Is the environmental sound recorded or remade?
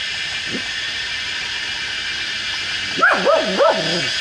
recorded